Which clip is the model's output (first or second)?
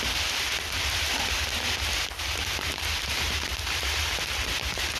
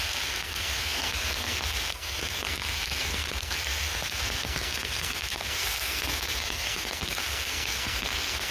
second